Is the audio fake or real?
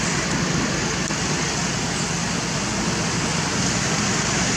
real